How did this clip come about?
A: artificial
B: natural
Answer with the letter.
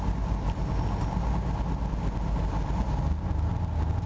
B